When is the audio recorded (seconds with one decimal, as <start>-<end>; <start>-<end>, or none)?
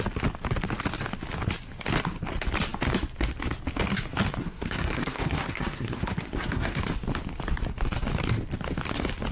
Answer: 0.0-4.4; 6.8-9.3